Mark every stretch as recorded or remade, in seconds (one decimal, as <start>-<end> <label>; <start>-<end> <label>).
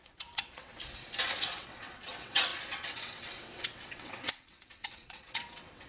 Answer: 0.0-0.7 remade; 0.7-1.3 recorded; 1.3-5.9 remade